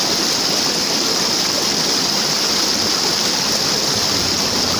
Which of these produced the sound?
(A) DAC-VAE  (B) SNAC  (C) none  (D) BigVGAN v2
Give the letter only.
C